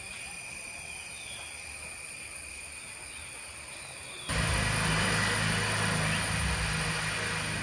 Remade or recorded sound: recorded